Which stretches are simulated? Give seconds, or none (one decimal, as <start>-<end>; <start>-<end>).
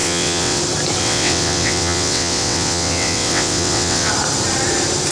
0.0-0.6; 1.0-4.1